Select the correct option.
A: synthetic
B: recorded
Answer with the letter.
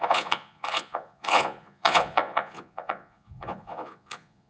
A